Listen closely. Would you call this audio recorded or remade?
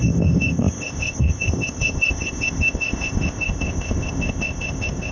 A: remade